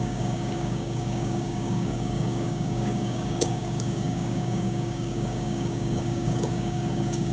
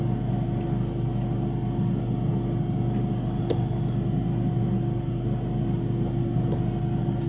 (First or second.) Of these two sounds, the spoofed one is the first